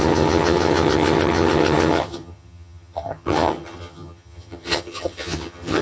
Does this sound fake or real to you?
fake